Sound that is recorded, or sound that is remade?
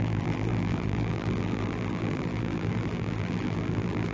remade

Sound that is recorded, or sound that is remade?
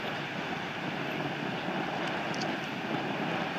recorded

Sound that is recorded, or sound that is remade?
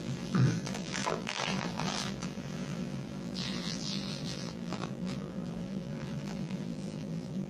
remade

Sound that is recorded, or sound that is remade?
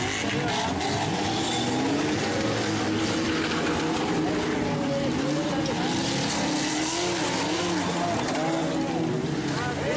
recorded